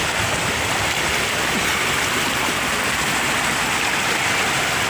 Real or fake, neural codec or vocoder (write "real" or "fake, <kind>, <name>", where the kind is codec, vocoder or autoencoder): real